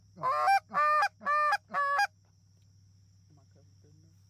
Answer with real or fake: real